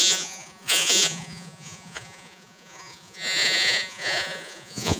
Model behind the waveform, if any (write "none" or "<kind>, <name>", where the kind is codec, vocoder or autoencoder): vocoder, Vocos